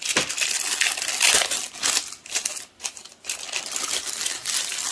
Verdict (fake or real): real